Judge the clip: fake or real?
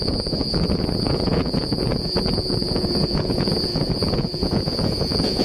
fake